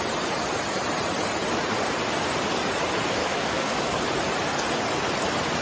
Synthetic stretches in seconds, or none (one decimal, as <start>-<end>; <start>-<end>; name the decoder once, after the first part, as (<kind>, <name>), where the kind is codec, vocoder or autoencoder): 3.2-4.0 (codec, DAC)